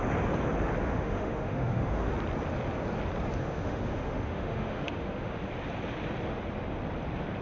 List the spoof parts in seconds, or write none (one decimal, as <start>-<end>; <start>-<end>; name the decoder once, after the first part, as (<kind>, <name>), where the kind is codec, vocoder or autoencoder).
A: 0.8-2.1 (autoencoder, DAC-VAE); 3.4-5.4

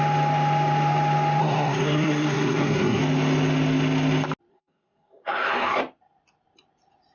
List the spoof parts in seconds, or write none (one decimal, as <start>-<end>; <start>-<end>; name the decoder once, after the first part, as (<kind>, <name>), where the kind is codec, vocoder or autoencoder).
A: 1.4-3.0 (codec, SNAC); 4.5-5.8

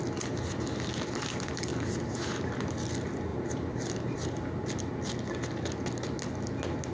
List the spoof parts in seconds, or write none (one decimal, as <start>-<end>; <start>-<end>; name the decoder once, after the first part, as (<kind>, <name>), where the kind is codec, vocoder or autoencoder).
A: 1.7-2.6 (vocoder, BigVGAN v2); 3.3-4.7

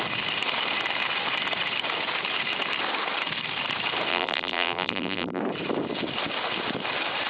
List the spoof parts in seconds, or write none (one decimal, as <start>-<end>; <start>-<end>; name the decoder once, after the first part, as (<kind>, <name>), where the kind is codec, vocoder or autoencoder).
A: 4.1-5.4 (vocoder, BigVGAN v2)

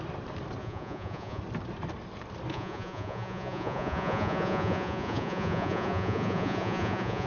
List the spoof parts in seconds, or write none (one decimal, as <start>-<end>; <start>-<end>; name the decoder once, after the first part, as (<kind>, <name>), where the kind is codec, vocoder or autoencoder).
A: 0.6-1.4 (vocoder, Vocos); 2.5-7.3

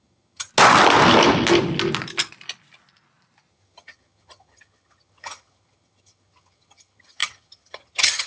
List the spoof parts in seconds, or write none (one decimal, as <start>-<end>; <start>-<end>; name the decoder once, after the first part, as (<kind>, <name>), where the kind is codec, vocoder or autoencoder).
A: 0.0-0.5 (vocoder, HiFi-GAN); 3.5-8.3